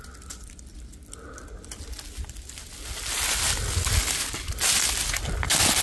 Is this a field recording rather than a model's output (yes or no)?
yes